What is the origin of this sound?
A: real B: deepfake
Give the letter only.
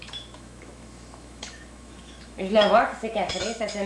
B